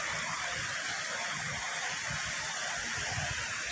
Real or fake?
real